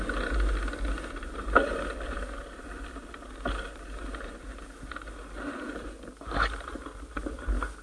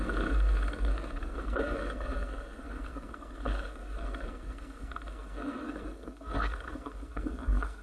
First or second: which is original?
first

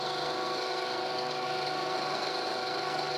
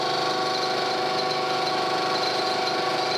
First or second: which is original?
second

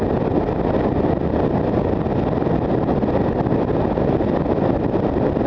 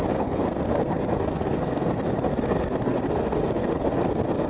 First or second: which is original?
first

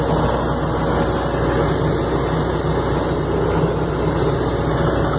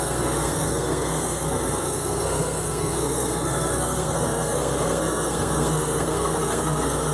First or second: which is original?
first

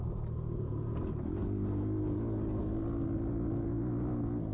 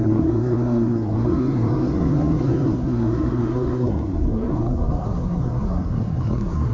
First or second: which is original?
first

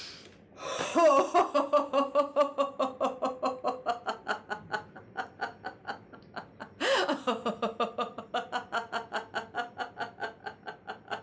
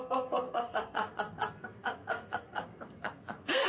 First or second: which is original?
first